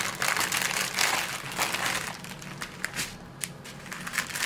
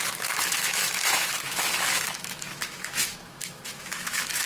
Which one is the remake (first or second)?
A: second